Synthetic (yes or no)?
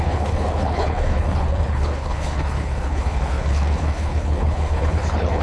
yes